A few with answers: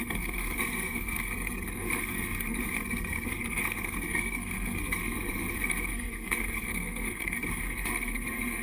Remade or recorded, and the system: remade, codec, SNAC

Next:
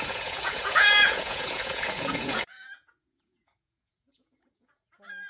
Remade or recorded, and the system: remade, vocoder, Vocos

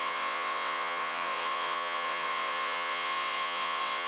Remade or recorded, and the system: remade, vocoder, WaveNeXt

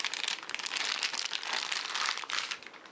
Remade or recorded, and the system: recorded